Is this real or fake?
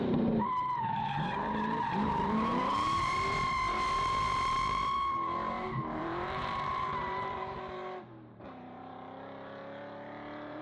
fake